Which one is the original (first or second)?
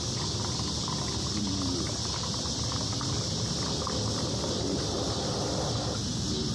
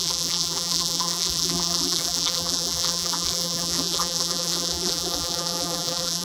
first